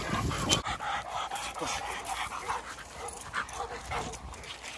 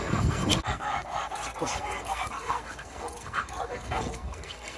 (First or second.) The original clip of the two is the first